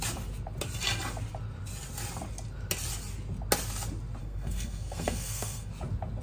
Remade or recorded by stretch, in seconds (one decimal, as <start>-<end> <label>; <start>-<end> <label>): 0.0-4.2 recorded; 4.2-5.7 remade; 5.7-6.2 recorded